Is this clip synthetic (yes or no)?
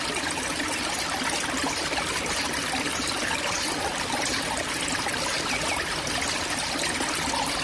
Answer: no